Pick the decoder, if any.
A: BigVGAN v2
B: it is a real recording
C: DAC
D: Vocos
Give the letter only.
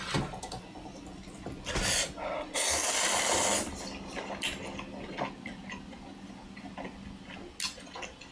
B